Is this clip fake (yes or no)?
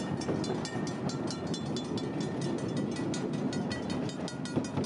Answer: no